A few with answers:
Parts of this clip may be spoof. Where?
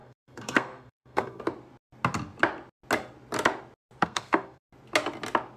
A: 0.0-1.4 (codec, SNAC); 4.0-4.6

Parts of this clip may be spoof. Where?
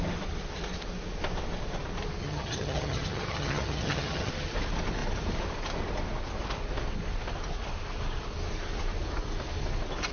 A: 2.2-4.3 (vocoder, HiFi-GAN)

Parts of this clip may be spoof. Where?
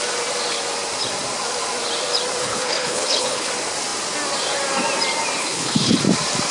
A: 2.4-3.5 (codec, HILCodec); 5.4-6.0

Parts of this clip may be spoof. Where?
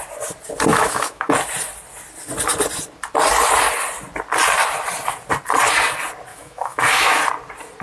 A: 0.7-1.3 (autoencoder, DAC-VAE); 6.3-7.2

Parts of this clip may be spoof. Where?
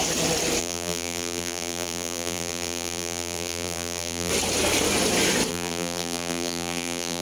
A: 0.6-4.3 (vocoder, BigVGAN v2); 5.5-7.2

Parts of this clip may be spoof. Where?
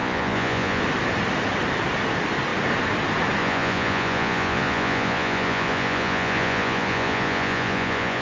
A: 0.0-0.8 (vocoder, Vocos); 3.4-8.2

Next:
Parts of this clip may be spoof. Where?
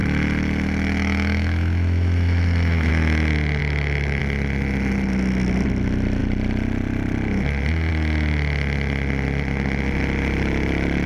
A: 0.0-2.9 (autoencoder, DAC-VAE); 3.6-4.2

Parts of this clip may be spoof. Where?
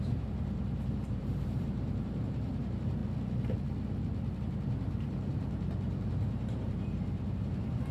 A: 0.0-3.0 (vocoder, BigVGAN v2); 4.4-7.9